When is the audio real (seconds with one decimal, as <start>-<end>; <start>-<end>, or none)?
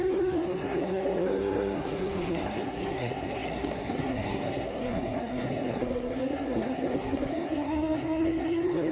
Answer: none